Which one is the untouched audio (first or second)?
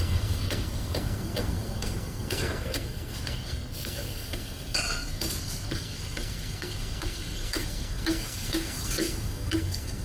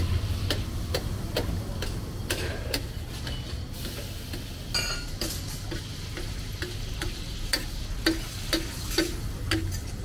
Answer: second